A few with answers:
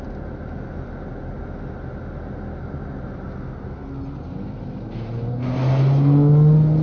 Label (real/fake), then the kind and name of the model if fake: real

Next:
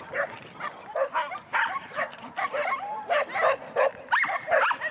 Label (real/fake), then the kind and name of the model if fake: real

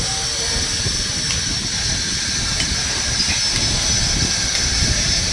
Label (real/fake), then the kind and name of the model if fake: real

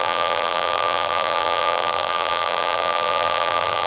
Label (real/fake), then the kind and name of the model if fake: fake, vocoder, BigVGAN v2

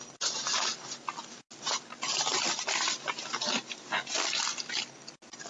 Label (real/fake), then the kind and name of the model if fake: real